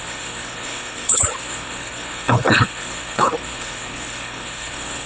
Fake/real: fake